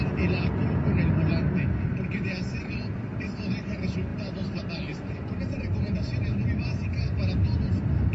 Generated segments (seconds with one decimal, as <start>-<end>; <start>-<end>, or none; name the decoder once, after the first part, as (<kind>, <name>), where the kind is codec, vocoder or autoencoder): 4.1-4.7 (vocoder, BigVGAN v2)